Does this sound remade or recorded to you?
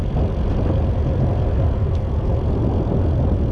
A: recorded